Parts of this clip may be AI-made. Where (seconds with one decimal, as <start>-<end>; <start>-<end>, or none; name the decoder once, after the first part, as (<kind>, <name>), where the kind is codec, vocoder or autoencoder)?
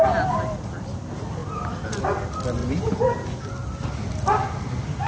none